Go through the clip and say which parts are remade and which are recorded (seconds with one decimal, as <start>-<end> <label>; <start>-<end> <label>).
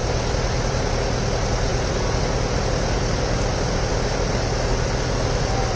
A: 0.0-5.8 recorded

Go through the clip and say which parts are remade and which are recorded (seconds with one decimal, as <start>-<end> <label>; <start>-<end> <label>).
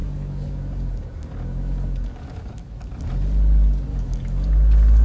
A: 0.0-3.0 remade; 3.0-3.9 recorded; 3.9-4.5 remade; 4.5-5.0 recorded